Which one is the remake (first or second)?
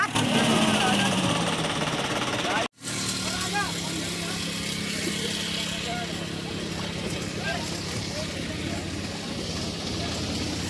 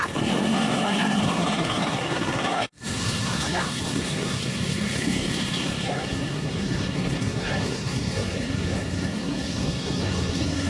second